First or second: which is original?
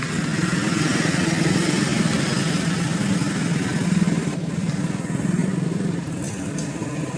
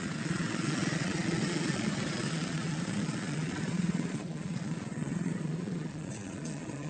first